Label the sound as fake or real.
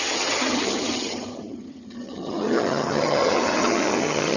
fake